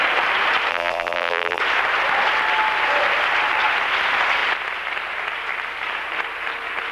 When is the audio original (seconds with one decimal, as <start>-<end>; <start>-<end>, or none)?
0.0-0.7; 1.6-6.9